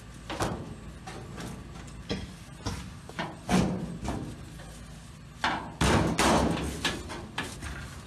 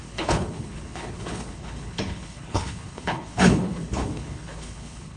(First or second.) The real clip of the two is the first